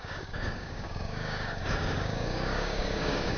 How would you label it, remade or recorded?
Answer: remade